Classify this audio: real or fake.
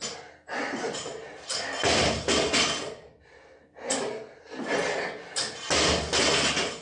real